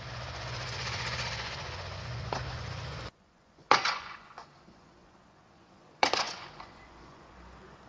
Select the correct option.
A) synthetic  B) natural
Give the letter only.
A